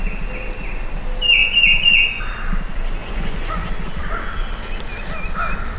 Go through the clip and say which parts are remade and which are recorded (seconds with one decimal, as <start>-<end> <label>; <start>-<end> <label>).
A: 0.0-1.4 recorded; 1.4-2.2 remade; 2.2-3.0 recorded; 3.0-3.7 remade; 3.7-5.8 recorded